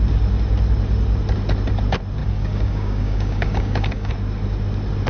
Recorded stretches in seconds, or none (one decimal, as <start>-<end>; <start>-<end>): 0.0-2.2; 4.1-5.1